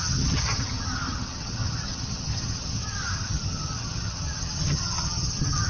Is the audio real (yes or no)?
no